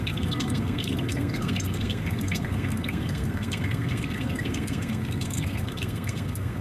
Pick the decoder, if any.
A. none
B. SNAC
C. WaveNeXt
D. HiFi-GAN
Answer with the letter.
B